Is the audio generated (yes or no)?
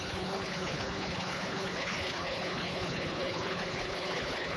yes